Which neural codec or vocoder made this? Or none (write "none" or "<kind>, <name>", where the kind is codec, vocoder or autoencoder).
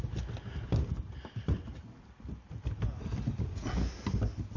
none